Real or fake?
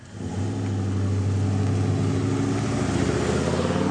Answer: real